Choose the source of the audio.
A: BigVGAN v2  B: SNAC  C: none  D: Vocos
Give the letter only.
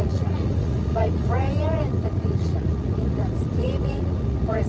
D